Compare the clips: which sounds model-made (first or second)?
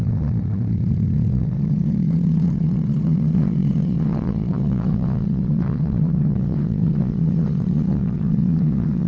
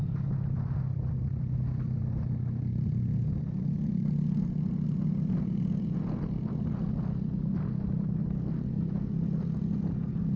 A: first